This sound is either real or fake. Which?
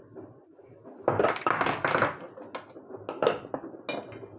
real